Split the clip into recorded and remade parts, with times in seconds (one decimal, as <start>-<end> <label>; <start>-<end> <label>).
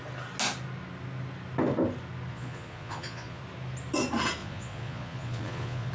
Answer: 0.0-2.3 recorded; 2.3-3.4 remade; 3.4-4.4 recorded; 4.4-5.9 remade